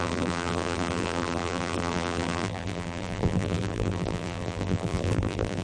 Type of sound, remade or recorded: remade